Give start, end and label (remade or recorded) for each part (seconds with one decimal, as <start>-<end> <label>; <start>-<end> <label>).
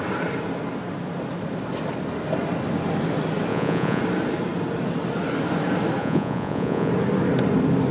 0.0-3.5 recorded; 3.5-4.0 remade; 4.0-6.0 recorded; 6.0-6.9 remade; 6.9-7.9 recorded